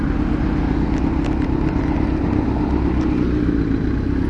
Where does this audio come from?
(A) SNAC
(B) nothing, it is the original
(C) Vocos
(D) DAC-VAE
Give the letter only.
B